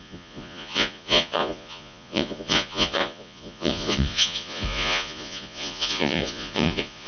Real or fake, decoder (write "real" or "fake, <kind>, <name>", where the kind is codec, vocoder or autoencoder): fake, vocoder, Vocos